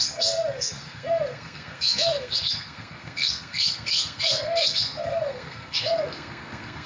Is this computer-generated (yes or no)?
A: yes